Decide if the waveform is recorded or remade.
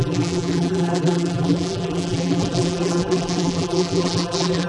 remade